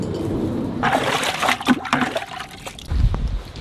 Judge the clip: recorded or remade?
recorded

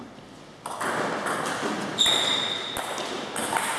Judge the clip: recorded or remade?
recorded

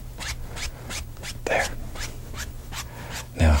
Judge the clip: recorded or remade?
recorded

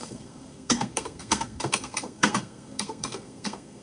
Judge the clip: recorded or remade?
remade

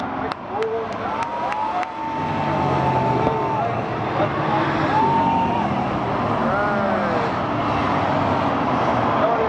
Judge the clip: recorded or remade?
recorded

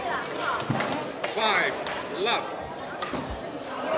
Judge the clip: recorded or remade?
recorded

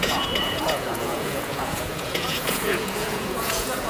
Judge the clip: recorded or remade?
remade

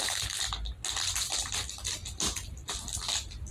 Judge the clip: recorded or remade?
recorded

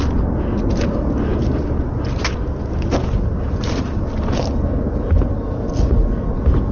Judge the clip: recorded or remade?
recorded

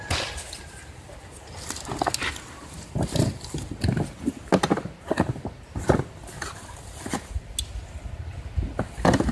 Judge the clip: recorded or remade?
recorded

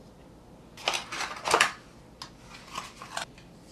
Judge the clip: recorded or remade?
recorded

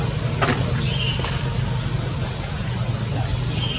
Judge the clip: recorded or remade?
recorded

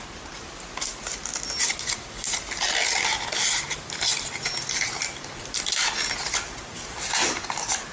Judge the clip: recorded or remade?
recorded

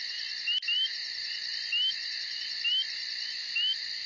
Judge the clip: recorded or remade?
recorded